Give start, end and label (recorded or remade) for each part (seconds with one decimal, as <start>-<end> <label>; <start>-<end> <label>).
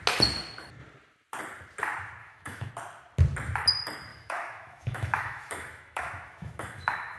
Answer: 0.0-2.2 recorded; 2.2-2.7 remade; 2.7-4.1 recorded; 4.1-7.2 remade